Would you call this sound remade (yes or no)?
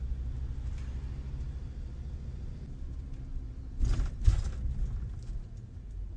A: no